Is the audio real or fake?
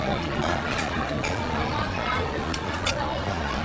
fake